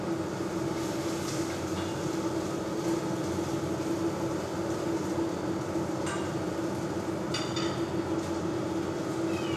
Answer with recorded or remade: recorded